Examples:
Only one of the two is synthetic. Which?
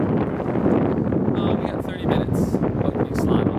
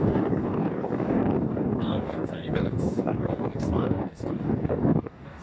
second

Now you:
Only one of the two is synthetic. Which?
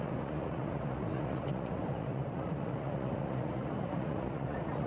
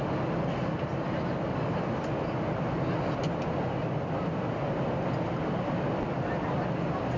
first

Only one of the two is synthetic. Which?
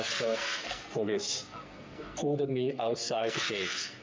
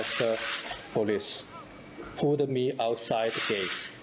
first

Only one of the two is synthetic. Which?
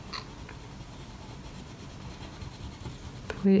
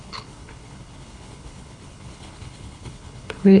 second